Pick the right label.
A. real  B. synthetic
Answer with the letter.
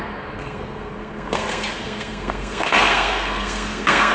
B